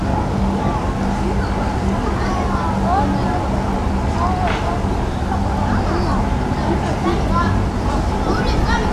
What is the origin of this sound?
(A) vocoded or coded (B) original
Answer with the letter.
B